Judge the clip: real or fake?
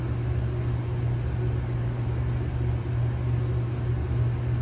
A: real